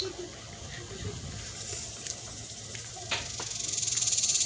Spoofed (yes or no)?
no